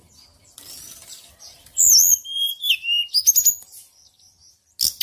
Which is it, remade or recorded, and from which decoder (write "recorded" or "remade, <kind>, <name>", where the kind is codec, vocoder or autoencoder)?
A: recorded